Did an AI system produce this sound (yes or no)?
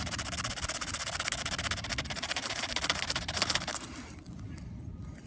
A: no